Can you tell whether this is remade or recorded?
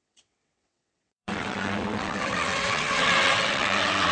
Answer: remade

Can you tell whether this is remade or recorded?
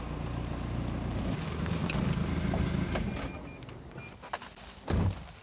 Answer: recorded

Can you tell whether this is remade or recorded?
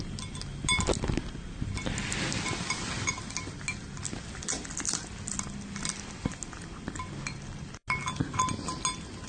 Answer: recorded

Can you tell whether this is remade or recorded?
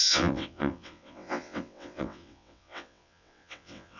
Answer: remade